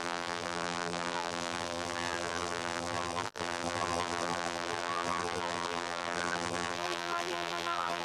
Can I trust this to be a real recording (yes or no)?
no